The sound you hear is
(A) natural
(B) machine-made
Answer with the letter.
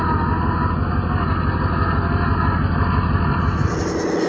A